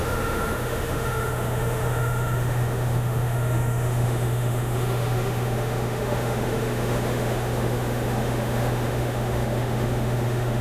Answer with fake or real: fake